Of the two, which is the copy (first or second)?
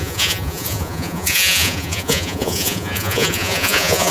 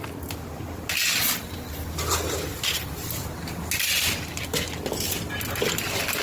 first